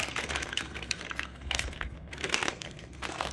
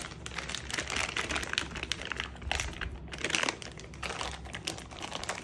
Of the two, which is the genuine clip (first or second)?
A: second